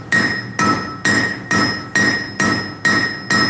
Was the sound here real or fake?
real